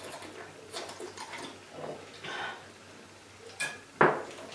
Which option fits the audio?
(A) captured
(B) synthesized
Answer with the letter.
A